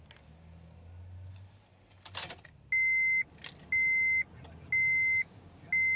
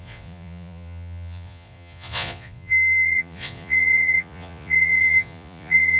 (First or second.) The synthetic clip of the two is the second